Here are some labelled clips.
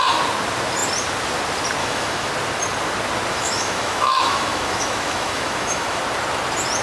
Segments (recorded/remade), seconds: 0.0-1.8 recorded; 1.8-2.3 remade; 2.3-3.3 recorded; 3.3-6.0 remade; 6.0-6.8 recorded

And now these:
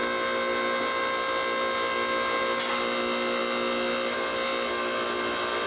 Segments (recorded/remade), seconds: 0.0-5.7 recorded

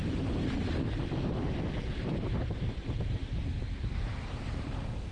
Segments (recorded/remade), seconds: 0.0-2.0 recorded; 2.0-5.1 remade

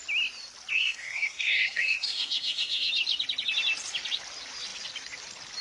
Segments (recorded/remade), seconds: 0.0-0.7 recorded; 0.7-2.9 remade; 2.9-5.6 recorded

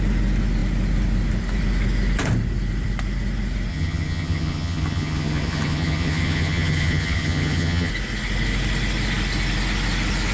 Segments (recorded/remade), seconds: 0.0-3.7 recorded; 3.7-7.9 remade; 7.9-10.3 recorded